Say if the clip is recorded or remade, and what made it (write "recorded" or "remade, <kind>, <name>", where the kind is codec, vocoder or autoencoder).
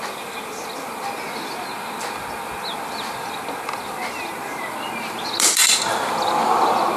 recorded